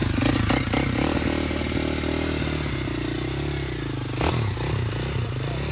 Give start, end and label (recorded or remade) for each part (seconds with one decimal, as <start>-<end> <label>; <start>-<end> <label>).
0.0-5.7 recorded